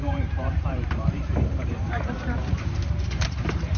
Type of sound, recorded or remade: remade